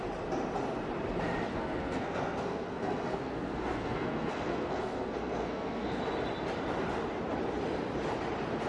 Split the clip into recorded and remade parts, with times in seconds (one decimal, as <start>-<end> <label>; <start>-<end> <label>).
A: 0.0-1.5 recorded; 1.5-6.0 remade; 6.0-8.7 recorded